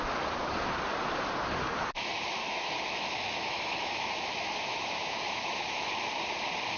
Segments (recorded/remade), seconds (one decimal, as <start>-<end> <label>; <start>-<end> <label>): 0.0-2.4 recorded; 2.4-6.0 remade; 6.0-6.8 recorded